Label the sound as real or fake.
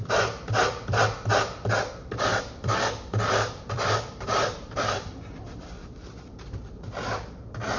fake